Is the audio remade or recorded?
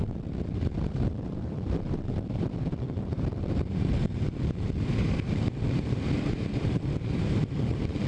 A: remade